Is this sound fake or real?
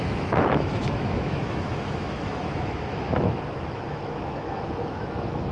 fake